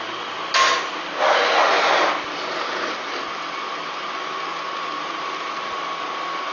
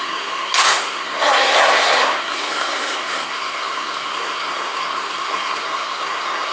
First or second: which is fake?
second